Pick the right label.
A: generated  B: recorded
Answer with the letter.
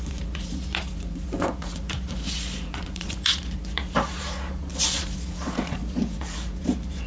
A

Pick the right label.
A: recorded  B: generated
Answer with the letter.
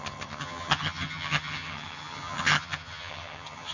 B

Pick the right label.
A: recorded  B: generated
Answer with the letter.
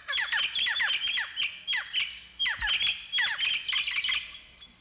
A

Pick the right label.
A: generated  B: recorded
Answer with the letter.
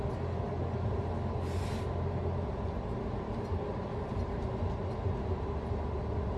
B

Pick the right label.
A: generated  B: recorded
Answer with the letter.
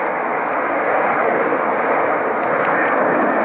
B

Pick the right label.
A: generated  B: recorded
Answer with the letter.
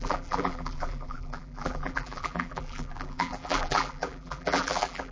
A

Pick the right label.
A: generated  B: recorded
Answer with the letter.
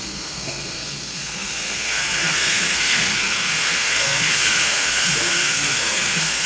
A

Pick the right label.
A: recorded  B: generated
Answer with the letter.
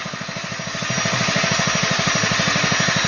A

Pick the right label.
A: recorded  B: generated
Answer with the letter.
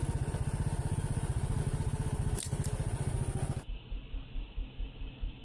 A